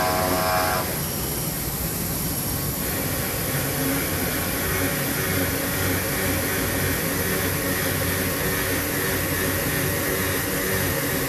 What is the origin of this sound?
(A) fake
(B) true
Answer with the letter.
B